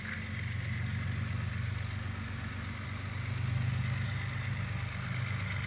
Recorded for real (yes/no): yes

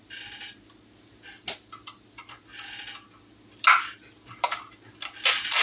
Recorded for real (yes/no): yes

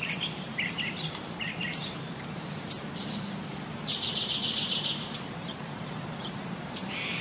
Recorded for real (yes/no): no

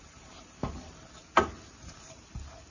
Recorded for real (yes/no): yes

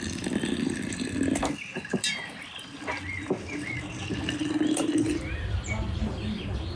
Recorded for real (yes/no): yes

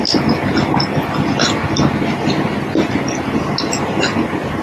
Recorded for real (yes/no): yes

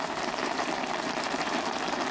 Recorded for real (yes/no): no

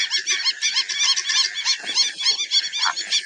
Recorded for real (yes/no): yes